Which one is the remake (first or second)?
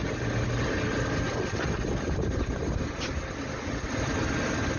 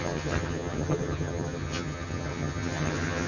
second